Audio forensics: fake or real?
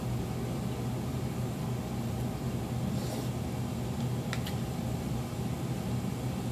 real